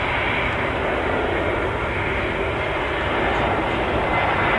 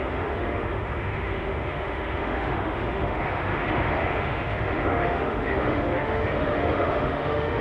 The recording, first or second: first